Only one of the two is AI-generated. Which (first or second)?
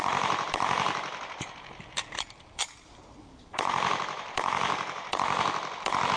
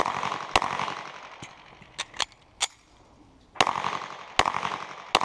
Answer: first